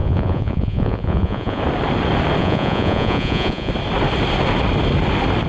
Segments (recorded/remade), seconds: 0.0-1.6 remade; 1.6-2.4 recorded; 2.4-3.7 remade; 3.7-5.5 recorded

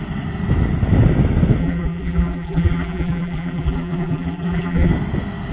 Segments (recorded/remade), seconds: 0.0-1.6 recorded; 1.6-4.9 remade; 4.9-5.5 recorded

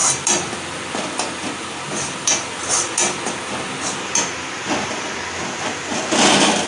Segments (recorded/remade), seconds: 0.0-6.7 recorded

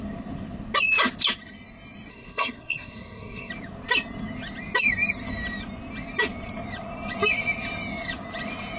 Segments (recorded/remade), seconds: 0.0-2.1 recorded; 2.1-3.5 remade; 3.5-8.8 recorded

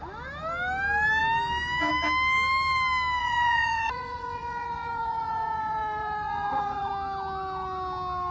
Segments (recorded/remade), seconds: 0.0-3.2 recorded; 3.2-6.9 remade; 6.9-8.3 recorded

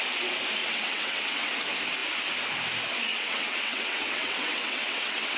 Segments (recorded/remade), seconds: 0.0-0.6 recorded; 0.6-1.5 remade; 1.5-3.1 recorded; 3.1-5.4 remade

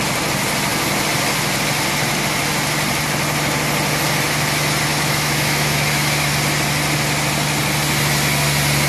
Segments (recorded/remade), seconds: 0.0-4.9 recorded; 4.9-6.3 remade; 6.3-8.9 recorded